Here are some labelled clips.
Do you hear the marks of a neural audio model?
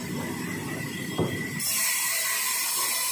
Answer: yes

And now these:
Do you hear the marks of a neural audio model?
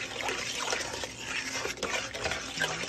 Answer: no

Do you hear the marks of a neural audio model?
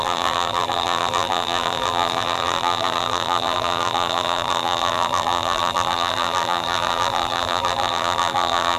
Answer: yes